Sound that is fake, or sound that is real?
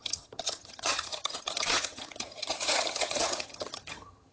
fake